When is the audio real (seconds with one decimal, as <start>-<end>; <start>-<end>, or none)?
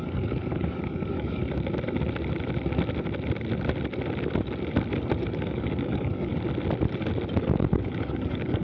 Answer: 1.4-5.3; 6.3-7.4